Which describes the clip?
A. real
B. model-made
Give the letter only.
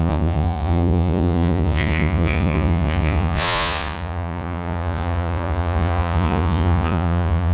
B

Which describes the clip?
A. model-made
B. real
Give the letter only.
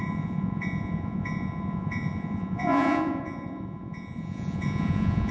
A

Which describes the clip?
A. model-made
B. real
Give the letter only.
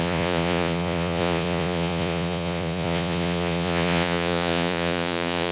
A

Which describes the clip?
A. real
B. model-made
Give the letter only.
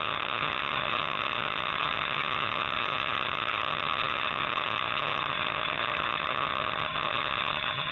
B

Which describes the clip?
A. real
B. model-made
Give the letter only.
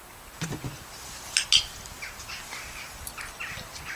A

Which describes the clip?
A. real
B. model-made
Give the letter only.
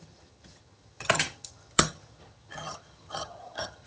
B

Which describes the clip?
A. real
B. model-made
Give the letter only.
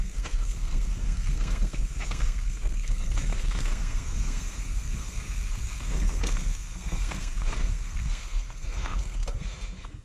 B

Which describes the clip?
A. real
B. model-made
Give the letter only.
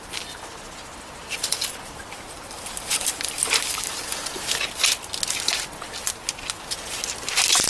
A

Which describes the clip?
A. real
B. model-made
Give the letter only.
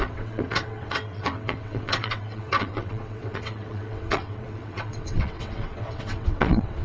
B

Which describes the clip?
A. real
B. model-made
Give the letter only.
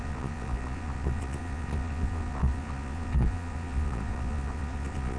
B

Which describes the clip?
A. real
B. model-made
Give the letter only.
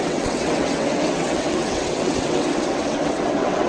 B